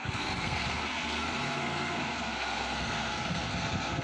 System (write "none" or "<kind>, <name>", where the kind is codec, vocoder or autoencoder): codec, SNAC